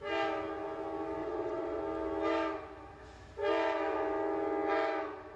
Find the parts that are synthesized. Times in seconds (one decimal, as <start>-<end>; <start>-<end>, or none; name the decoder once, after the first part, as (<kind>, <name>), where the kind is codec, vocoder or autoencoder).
1.2-1.8 (vocoder, WaveNeXt)